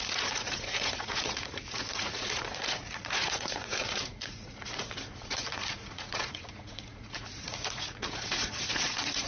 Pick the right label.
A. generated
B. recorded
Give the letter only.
A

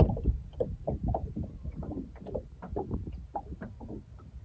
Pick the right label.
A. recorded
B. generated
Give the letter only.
A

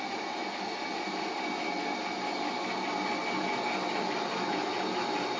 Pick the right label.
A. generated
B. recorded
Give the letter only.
B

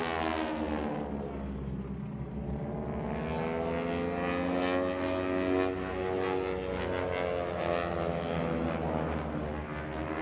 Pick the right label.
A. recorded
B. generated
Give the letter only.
A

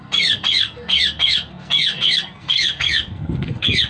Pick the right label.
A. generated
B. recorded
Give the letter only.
A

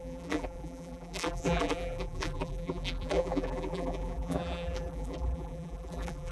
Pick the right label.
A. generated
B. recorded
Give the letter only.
A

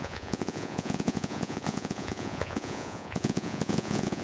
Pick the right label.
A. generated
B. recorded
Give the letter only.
A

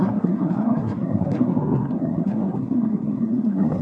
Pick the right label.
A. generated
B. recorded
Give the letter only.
A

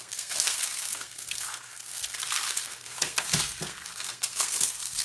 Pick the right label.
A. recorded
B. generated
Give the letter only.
B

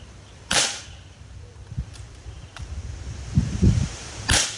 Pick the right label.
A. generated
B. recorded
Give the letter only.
A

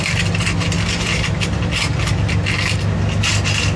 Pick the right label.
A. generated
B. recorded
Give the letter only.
B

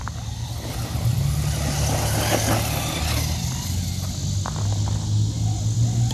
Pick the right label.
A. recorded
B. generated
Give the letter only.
A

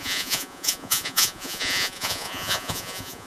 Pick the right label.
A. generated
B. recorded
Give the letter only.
A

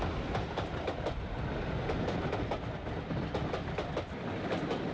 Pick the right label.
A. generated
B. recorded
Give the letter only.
B